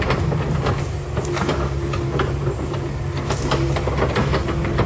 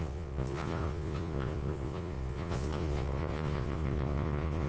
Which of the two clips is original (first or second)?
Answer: first